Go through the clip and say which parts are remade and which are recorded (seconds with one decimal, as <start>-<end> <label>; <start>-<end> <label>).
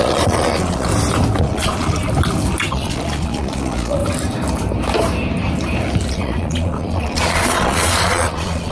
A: 0.0-0.9 remade; 0.9-1.4 recorded; 1.4-2.0 remade; 2.0-2.7 recorded; 2.7-4.0 remade; 4.0-6.1 recorded; 6.1-8.7 remade